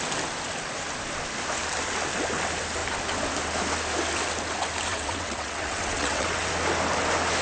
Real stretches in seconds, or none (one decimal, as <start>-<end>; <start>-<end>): 0.0-4.9; 6.5-7.4